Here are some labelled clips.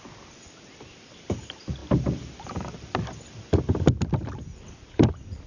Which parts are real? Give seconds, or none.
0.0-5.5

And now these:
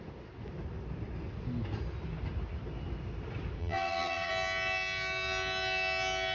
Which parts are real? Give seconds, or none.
0.0-3.6; 4.3-6.3

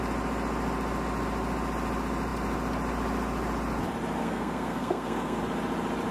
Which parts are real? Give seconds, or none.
0.0-4.2; 5.4-6.1

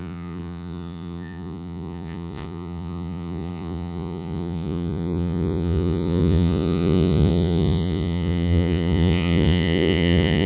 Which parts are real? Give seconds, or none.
none

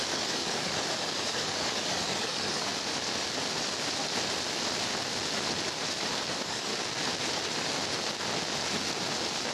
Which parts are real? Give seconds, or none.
2.7-6.3; 6.7-9.5